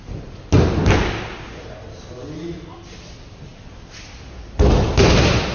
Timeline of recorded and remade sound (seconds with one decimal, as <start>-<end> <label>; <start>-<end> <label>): 0.0-5.5 recorded